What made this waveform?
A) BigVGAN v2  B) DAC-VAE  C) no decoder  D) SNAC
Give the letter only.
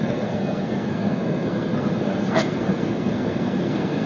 D